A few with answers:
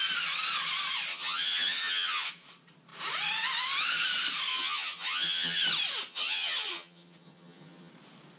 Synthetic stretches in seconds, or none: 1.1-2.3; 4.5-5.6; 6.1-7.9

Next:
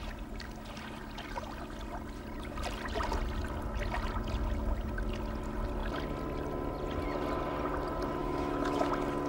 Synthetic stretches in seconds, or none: 8.2-8.9